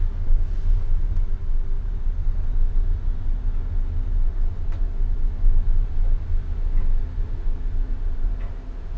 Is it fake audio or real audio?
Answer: real